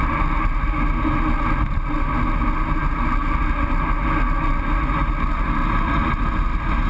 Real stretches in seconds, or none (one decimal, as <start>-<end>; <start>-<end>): 0.0-6.9